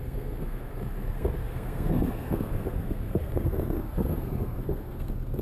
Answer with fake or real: fake